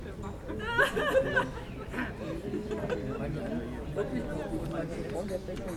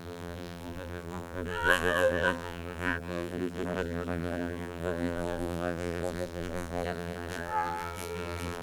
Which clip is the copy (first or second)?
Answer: second